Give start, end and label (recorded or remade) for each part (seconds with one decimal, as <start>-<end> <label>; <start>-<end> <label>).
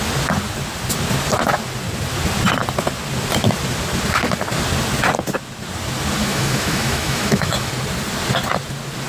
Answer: 0.0-6.2 recorded; 6.2-7.7 remade; 7.7-9.1 recorded